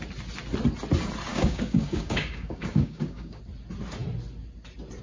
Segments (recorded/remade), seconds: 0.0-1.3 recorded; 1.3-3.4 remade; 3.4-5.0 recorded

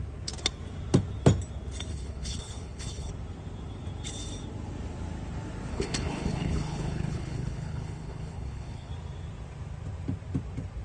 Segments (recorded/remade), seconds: 0.0-1.9 recorded; 1.9-3.1 remade; 3.1-5.7 recorded; 5.7-8.9 remade; 8.9-10.8 recorded